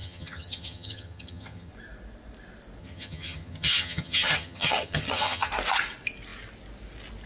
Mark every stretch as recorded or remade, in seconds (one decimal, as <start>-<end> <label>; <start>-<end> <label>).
0.0-1.7 remade; 1.7-2.8 recorded; 2.8-5.5 remade; 5.5-7.3 recorded